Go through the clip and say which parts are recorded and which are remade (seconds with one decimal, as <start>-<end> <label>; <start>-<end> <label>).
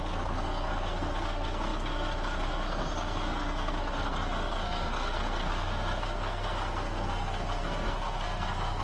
0.0-8.8 remade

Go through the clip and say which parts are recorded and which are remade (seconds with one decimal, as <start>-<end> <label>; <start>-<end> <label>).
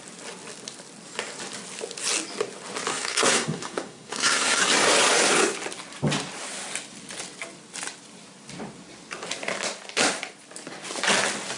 0.0-2.9 recorded; 2.9-4.6 remade; 4.6-11.6 recorded